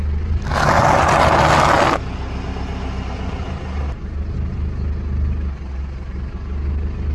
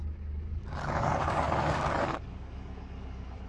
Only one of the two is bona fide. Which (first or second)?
first